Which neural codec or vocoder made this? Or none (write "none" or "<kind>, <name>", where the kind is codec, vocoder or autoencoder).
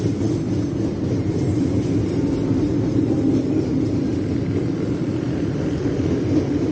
none